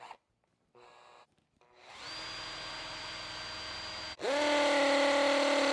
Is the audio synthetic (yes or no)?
no